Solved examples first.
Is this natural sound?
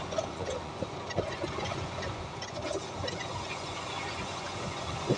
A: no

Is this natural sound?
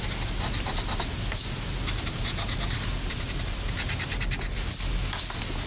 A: yes